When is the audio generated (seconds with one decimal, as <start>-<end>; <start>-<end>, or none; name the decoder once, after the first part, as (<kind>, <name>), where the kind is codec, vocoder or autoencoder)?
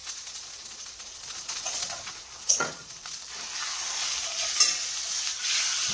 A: 0.0-3.2 (vocoder, Vocos); 5.3-5.9